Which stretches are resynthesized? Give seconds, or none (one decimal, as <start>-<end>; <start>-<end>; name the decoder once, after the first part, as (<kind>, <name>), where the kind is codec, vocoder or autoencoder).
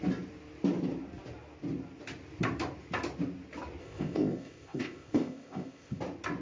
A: 3.8-6.0 (codec, ZipCodec)